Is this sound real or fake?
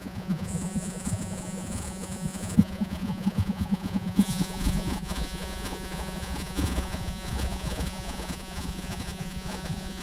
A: fake